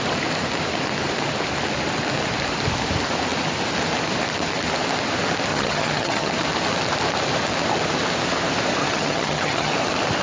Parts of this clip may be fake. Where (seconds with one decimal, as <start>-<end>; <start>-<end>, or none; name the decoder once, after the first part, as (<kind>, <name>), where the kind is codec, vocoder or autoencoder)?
5.5-6.3 (vocoder, HiFi-GAN); 8.8-9.7